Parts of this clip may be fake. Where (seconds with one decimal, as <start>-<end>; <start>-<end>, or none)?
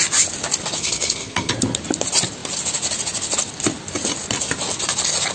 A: 0.8-1.5